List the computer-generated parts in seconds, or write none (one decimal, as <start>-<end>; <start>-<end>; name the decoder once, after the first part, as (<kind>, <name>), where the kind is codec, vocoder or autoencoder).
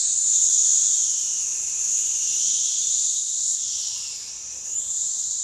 0.0-0.6 (vocoder, BigVGAN v2); 1.4-2.3; 3.9-5.4